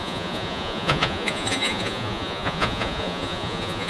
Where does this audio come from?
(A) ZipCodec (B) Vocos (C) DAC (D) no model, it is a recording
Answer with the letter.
B